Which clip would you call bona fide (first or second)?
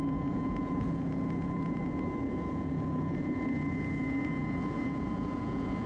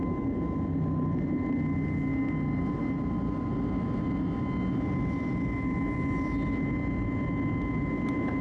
second